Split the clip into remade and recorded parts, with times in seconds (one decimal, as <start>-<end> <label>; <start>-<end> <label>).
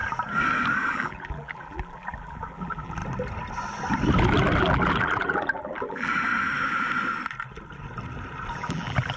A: 0.0-0.9 recorded; 0.9-3.0 remade; 3.0-4.6 recorded; 4.6-6.1 remade; 6.1-8.6 recorded; 8.6-9.2 remade